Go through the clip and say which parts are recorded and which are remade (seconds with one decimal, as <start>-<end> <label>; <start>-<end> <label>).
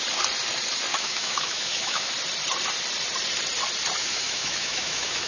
0.0-0.9 recorded; 0.9-2.1 remade; 2.1-4.0 recorded; 4.0-5.3 remade